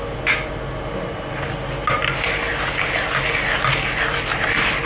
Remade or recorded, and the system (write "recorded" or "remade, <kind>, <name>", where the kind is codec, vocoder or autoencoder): recorded